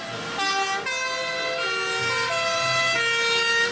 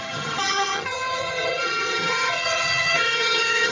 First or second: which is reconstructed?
second